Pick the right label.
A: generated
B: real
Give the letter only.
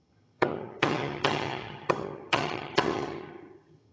A